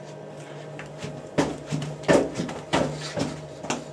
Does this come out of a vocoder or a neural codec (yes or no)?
no